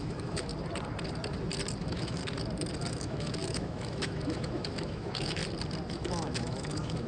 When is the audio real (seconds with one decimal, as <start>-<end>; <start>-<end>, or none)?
0.5-1.8; 2.2-2.9; 5.4-5.9